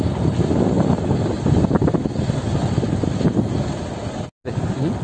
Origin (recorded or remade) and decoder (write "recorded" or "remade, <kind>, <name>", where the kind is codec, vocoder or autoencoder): recorded